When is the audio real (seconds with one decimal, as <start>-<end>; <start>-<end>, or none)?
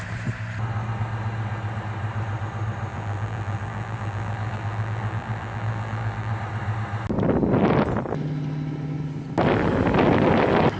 0.0-2.9; 6.3-10.8